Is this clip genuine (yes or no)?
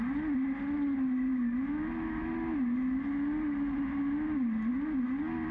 yes